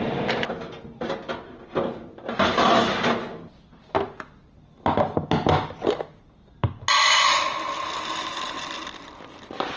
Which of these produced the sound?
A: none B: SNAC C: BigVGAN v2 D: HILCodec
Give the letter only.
A